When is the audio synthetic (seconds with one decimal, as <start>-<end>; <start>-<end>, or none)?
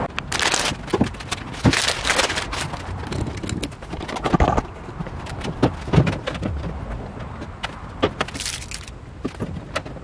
none